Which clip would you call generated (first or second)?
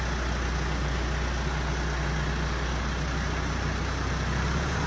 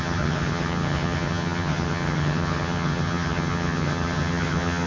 second